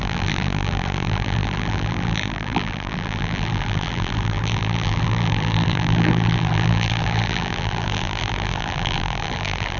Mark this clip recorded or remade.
remade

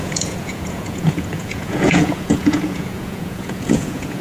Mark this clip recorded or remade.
remade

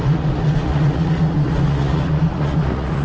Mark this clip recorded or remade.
remade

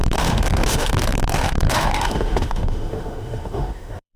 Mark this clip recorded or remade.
remade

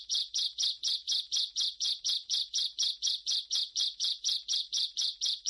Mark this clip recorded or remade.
remade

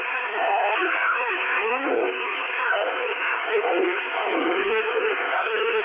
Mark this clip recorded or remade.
remade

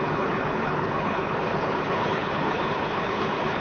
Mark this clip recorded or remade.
remade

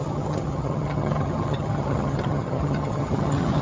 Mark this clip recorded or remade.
remade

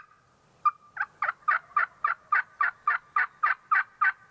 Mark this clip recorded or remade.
recorded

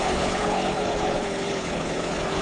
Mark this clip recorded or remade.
remade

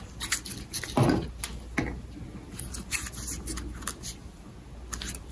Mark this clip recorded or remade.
recorded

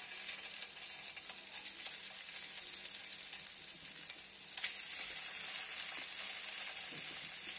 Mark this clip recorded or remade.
recorded